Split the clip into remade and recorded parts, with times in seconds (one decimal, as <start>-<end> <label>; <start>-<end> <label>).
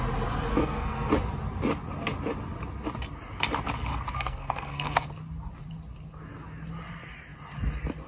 0.0-0.5 recorded; 0.5-1.1 remade; 1.1-4.1 recorded; 4.1-5.1 remade; 5.1-8.1 recorded